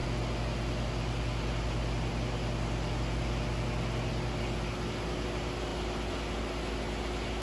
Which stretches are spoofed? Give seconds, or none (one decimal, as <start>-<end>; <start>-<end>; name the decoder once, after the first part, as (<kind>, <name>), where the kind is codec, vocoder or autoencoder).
none